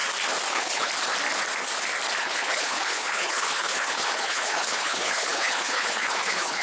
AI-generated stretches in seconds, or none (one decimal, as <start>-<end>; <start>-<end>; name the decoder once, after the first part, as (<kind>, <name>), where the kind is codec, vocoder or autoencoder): 0.5-0.9 (codec, HILCodec); 2.2-6.6